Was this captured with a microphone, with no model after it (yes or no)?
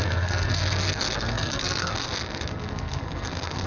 no